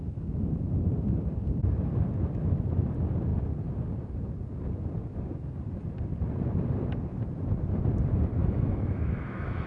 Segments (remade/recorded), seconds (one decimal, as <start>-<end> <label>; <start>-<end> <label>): 0.0-8.4 recorded; 8.4-9.7 remade